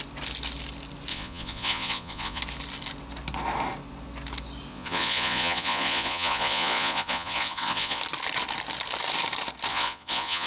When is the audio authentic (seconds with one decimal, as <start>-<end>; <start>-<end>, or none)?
0.0-1.1; 2.4-4.7; 8.0-9.7